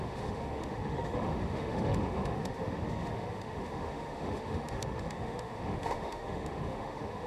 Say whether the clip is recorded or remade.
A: remade